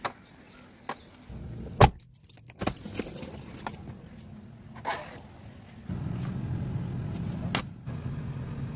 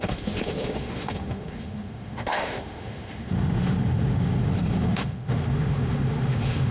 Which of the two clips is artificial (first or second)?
second